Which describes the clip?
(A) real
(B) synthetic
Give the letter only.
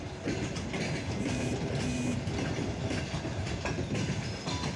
A